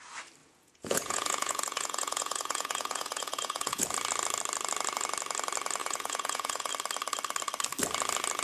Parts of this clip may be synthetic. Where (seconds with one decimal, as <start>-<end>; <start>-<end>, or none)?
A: 0.4-3.9; 5.8-6.7